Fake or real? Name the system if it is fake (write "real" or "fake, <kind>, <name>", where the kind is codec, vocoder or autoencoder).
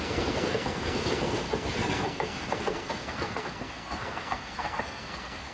fake, codec, SNAC